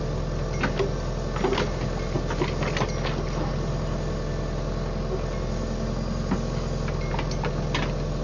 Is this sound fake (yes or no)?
no